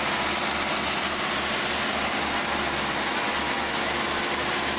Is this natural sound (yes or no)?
yes